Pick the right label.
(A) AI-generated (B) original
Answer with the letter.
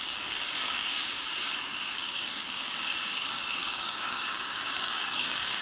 A